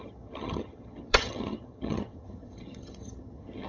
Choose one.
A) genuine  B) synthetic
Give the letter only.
B